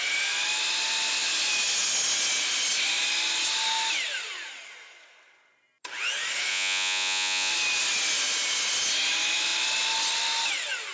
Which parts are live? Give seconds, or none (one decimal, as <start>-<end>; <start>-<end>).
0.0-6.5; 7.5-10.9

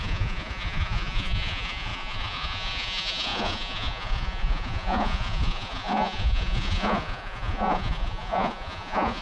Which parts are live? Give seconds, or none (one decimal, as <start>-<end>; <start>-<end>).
none

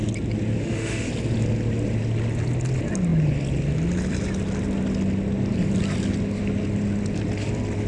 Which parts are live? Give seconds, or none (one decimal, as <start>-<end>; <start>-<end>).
0.0-0.6; 1.1-7.9